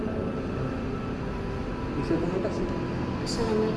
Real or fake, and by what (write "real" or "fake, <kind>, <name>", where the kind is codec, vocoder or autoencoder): real